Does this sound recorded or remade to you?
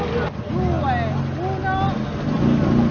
recorded